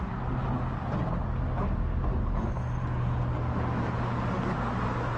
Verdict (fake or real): real